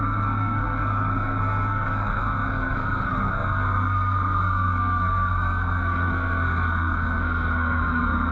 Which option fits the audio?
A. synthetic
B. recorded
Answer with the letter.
A